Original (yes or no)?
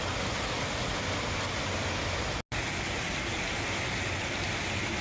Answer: yes